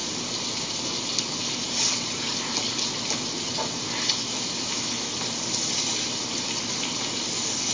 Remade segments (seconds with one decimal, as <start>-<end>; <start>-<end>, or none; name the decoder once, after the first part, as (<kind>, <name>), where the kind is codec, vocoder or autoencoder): 4.2-5.2 (autoencoder, DAC-VAE)